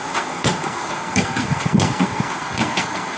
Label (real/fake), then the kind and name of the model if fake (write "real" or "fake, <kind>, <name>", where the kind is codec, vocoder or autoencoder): fake, codec, SNAC